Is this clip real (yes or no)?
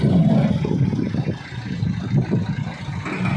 yes